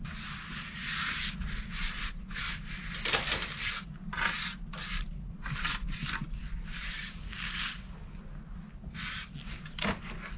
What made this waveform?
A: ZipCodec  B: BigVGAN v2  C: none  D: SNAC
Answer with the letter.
C